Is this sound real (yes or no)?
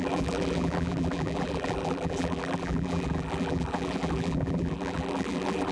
no